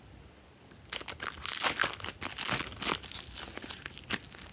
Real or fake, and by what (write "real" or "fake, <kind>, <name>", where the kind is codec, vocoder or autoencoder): real